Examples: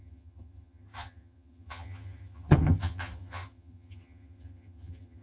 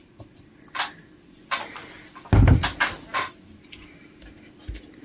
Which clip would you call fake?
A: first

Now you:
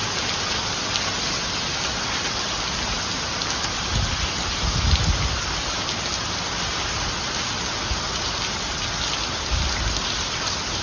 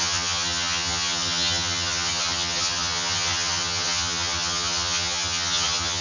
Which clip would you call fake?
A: second